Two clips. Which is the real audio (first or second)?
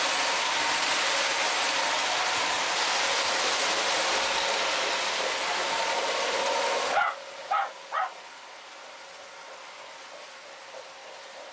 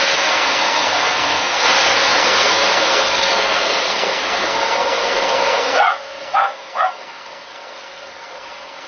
first